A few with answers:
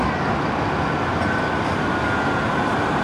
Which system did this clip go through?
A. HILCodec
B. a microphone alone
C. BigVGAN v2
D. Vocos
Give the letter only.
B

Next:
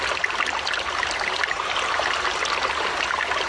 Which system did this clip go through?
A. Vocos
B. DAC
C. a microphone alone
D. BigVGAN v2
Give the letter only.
C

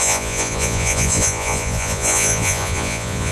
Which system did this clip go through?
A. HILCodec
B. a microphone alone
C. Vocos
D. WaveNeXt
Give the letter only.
C